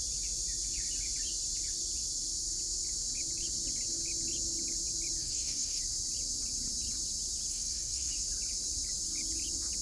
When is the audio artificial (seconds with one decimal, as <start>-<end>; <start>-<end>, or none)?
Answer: 5.2-5.8; 7.5-8.1